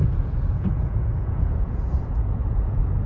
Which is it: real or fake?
fake